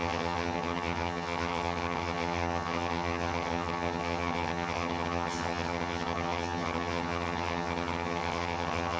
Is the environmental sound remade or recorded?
remade